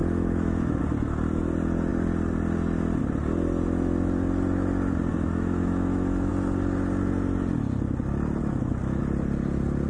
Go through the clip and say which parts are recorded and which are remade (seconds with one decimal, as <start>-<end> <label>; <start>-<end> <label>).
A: 0.0-0.8 remade; 0.8-5.1 recorded; 5.1-6.3 remade; 6.3-8.4 recorded; 8.4-9.0 remade; 9.0-9.9 recorded